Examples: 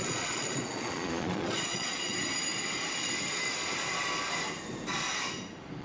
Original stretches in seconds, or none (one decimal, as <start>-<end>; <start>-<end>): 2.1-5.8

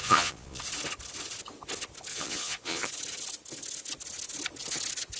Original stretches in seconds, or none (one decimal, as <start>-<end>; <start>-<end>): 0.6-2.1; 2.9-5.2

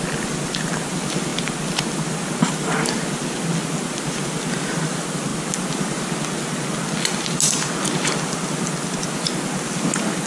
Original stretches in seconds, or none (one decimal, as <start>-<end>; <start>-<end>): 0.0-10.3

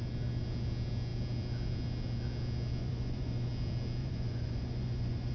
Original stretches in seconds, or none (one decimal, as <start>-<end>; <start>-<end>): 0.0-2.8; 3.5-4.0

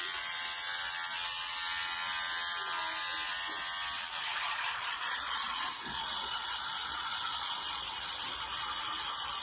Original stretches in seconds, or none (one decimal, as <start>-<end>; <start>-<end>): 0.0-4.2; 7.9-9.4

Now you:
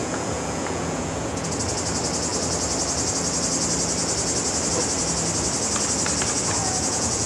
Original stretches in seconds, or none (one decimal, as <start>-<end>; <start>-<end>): 1.5-6.6

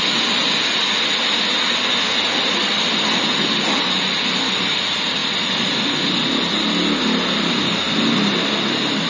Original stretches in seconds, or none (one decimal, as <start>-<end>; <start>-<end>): 0.0-9.1

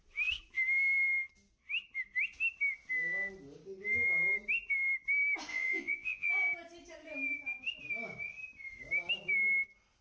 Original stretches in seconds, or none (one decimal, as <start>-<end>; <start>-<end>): 0.0-5.5; 6.3-10.0